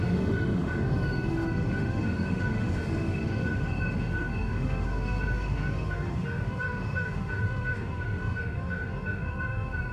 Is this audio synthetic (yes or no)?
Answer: yes